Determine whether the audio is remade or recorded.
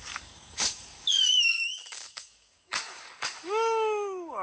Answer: remade